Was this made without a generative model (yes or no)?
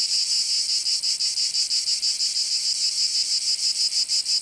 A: yes